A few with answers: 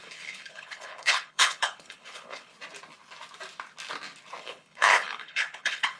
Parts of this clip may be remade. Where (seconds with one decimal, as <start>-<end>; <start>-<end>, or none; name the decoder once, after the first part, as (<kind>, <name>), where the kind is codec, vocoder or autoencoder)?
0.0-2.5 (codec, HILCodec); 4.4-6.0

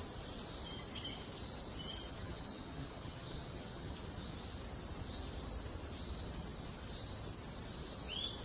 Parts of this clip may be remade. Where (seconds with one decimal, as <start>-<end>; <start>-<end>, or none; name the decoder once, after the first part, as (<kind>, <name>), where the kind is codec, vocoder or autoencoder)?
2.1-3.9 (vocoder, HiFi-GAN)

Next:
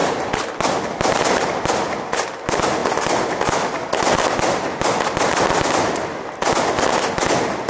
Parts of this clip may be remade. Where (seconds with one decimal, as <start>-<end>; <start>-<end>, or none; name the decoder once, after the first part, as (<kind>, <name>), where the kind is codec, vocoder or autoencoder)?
none

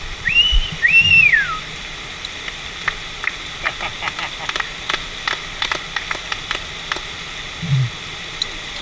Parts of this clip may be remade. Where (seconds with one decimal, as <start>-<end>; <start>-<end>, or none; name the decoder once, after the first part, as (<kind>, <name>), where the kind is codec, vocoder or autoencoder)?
none

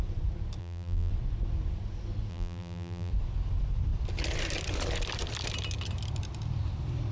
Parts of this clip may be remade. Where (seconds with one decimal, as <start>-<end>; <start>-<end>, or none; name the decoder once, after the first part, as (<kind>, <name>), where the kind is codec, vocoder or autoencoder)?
0.6-1.1 (vocoder, BigVGAN v2); 2.3-3.1